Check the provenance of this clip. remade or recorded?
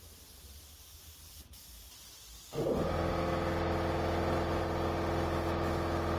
recorded